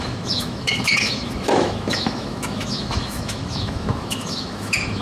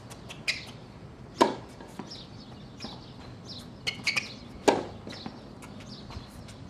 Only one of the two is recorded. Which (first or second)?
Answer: second